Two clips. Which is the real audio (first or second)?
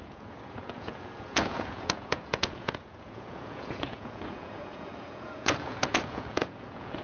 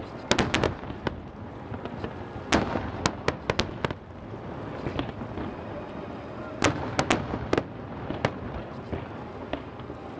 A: second